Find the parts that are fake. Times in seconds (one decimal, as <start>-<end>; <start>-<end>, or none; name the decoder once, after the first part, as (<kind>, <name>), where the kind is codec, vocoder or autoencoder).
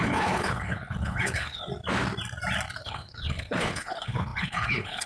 0.0-1.6 (codec, HILCodec); 2.8-5.1